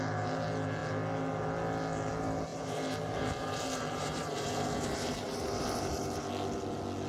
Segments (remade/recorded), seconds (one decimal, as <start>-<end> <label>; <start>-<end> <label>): 0.0-2.5 recorded; 2.5-6.2 remade; 6.2-7.1 recorded